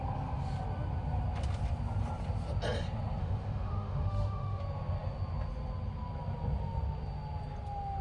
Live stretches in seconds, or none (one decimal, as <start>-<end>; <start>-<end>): 0.0-3.2; 4.6-8.0